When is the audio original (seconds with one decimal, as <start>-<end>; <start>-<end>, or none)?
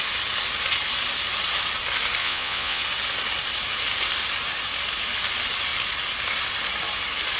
0.0-2.2; 2.8-7.4